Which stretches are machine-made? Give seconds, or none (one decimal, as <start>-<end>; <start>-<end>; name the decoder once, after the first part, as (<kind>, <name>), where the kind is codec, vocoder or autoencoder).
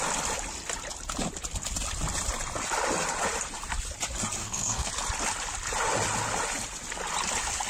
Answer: 4.4-4.9 (codec, SNAC)